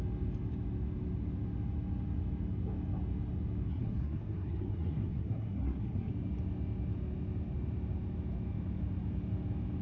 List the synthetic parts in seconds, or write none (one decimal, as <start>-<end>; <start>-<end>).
3.7-6.1

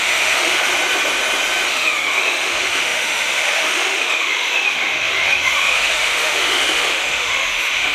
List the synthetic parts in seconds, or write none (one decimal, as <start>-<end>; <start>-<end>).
0.0-0.7; 1.7-7.9

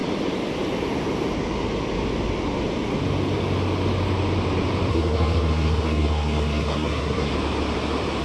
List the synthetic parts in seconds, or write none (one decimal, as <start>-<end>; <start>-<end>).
4.9-7.3

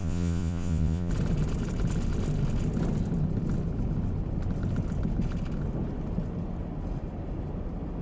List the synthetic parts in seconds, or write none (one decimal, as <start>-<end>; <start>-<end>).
0.0-1.1

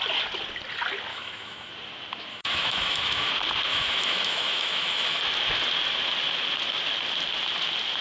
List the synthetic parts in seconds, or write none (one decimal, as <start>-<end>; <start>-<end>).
1.1-1.7; 2.3-3.3; 3.7-5.2

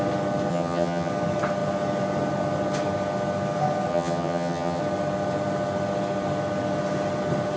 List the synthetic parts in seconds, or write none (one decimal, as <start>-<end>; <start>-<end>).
0.5-1.1; 3.9-4.8